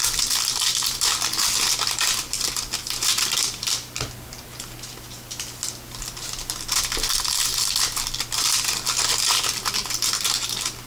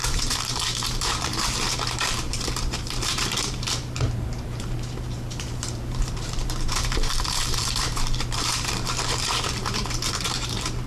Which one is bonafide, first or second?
first